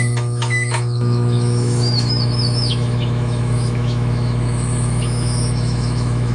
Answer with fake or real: fake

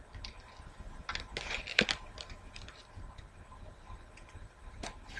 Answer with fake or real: real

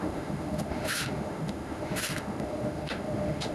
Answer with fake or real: fake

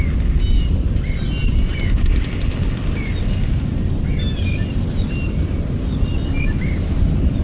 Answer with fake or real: real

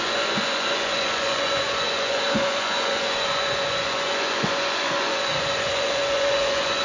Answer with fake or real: fake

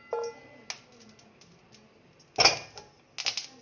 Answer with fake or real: real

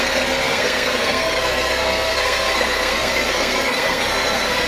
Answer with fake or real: fake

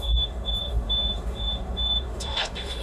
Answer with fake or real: fake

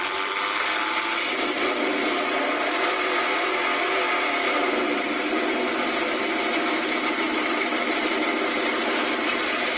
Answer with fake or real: real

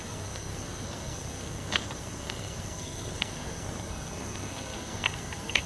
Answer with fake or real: fake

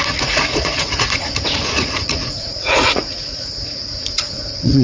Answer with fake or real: fake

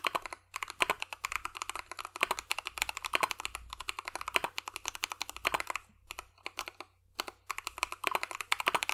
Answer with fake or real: real